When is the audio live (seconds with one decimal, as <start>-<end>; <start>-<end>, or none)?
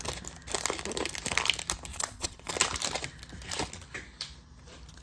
0.0-1.9; 2.5-5.0